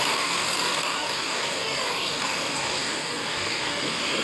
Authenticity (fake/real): fake